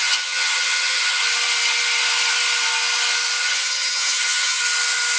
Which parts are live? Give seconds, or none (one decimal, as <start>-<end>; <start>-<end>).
1.2-3.4; 4.6-5.2

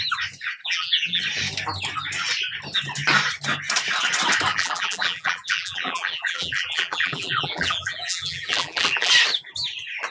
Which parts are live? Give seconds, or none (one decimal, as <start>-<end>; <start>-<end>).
0.0-0.6; 1.2-4.5; 9.1-10.1

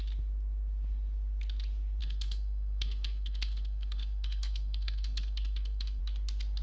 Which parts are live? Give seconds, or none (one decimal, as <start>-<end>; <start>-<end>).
0.0-2.0; 6.0-6.6

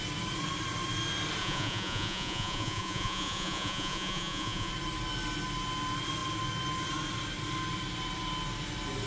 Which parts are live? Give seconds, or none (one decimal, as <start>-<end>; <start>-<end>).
0.0-1.4; 4.7-9.1